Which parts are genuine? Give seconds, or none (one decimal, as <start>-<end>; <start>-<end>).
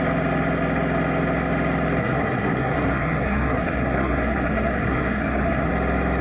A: 0.0-2.0; 5.7-6.2